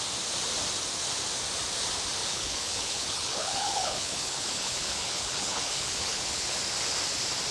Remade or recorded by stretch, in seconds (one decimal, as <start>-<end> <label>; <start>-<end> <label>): 0.0-2.2 recorded; 2.2-6.6 remade; 6.6-7.5 recorded